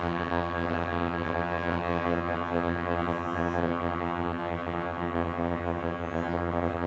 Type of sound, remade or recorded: remade